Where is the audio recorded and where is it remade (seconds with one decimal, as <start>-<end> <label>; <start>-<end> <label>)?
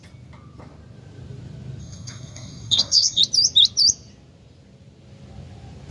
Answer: 0.0-1.8 recorded; 1.8-3.2 remade; 3.2-5.9 recorded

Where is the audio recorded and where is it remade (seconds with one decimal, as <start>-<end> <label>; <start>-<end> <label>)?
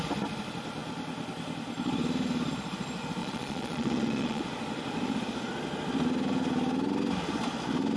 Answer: 0.0-3.2 recorded; 3.2-4.4 remade; 4.4-8.0 recorded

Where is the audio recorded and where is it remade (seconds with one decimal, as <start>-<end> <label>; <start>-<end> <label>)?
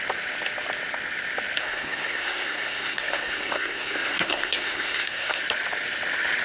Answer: 0.0-1.6 recorded; 1.6-5.4 remade; 5.4-6.4 recorded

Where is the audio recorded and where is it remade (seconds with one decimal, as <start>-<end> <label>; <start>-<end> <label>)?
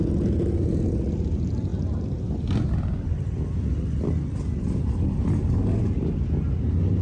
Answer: 0.0-7.0 recorded